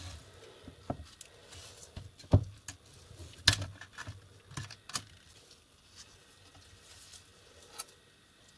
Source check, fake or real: real